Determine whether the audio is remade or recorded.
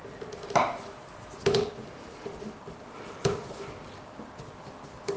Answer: recorded